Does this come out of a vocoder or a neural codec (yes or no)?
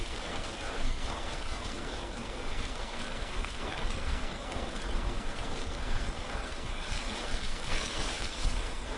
yes